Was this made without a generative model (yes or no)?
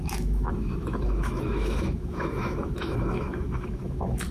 no